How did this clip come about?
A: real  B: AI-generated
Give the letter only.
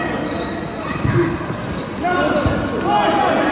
A